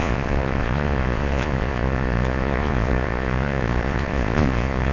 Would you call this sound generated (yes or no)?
yes